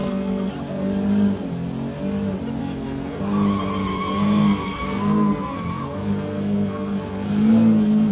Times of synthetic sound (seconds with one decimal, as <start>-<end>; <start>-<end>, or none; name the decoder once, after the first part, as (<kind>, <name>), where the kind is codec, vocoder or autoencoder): 0.0-0.5 (codec, SNAC); 2.6-3.2; 3.9-8.1